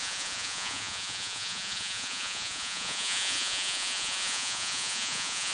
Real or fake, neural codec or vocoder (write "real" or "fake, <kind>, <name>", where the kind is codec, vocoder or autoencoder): fake, vocoder, Vocos